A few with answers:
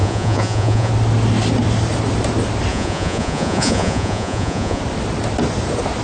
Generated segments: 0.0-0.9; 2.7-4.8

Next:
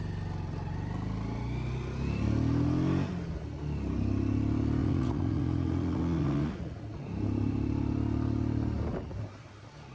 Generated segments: 4.8-6.8

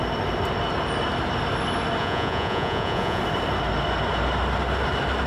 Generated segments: 2.0-3.2

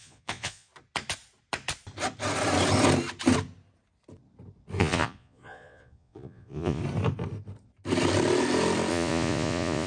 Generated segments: 0.0-0.7; 4.8-6.8; 8.9-9.9

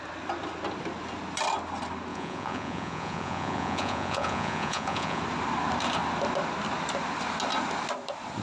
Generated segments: 2.1-5.2

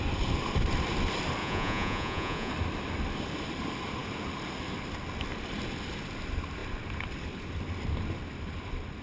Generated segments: 1.4-2.5

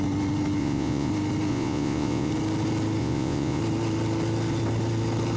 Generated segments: 0.6-1.1; 1.5-2.3; 3.0-3.6